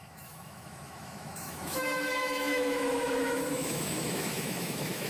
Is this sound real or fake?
fake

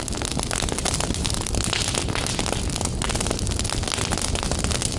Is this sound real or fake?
real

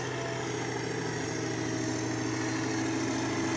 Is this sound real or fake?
real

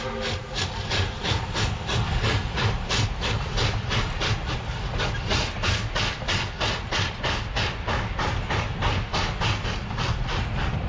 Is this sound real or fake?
real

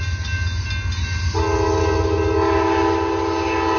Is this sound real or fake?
real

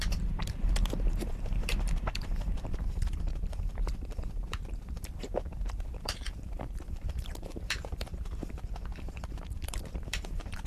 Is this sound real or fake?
fake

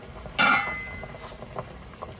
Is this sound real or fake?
real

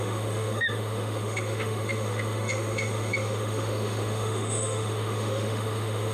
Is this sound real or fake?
fake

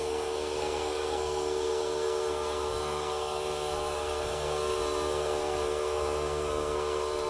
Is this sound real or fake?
fake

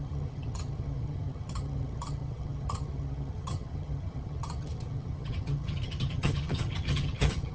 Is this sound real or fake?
fake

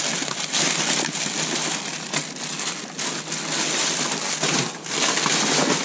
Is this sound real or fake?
real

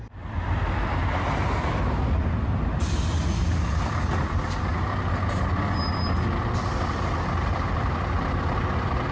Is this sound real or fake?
real